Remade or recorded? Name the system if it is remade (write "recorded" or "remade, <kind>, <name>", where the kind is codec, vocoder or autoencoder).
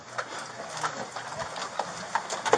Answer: recorded